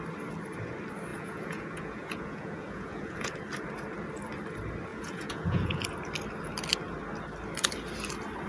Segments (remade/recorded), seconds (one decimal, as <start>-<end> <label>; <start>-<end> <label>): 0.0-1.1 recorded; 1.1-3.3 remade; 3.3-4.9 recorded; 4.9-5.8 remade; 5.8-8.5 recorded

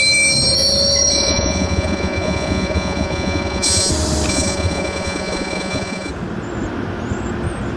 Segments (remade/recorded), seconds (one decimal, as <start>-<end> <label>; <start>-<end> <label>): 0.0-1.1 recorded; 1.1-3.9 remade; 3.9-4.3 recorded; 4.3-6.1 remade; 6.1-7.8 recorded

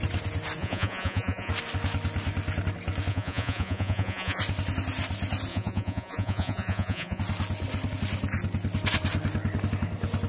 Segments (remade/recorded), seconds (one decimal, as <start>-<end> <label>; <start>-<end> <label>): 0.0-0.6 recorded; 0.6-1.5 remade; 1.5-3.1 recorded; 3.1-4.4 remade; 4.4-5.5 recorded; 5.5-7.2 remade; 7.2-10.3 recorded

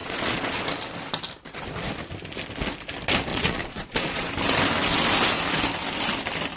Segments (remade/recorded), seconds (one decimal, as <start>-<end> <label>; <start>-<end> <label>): 0.0-0.6 remade; 0.6-3.3 recorded; 3.3-4.3 remade; 4.3-6.6 recorded